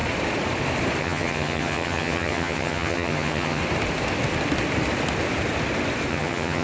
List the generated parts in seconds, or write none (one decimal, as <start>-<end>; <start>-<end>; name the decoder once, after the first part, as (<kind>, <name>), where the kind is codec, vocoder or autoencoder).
1.0-3.6 (vocoder, HiFi-GAN); 6.1-6.6